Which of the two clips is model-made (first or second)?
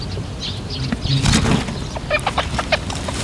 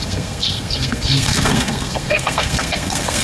second